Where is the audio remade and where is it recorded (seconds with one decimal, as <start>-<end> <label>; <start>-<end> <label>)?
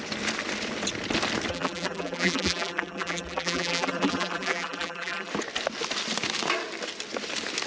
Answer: 0.0-1.5 recorded; 1.5-5.3 remade; 5.3-7.7 recorded